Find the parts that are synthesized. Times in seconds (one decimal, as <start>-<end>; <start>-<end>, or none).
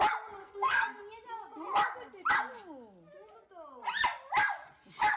0.4-1.0